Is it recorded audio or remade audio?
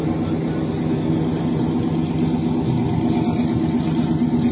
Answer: recorded